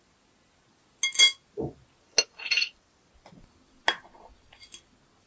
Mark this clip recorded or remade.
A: recorded